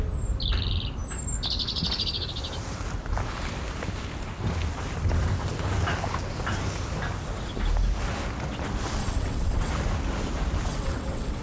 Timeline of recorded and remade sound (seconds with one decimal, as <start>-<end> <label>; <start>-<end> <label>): 0.0-9.0 recorded; 9.0-9.7 remade; 9.7-10.7 recorded; 10.7-11.4 remade